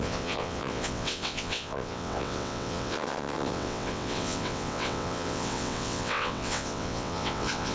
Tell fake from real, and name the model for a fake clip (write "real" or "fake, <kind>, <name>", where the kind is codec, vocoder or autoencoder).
fake, vocoder, WaveNeXt